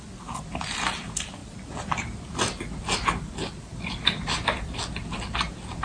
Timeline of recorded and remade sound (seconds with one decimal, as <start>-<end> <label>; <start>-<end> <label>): 0.0-5.8 recorded

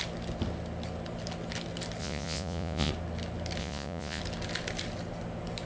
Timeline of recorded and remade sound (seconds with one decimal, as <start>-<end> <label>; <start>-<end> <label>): 0.0-2.0 recorded; 2.0-2.9 remade; 2.9-3.6 recorded; 3.6-4.2 remade; 4.2-5.7 recorded

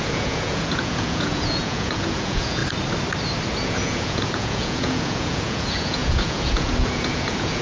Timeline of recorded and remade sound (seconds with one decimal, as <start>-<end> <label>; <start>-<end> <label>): 0.0-2.6 remade; 2.6-3.6 recorded; 3.6-7.6 remade

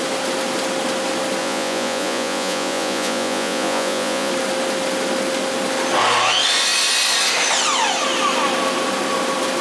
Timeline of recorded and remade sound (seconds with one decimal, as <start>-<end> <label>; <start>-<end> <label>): 0.0-1.4 recorded; 1.4-4.3 remade; 4.3-9.6 recorded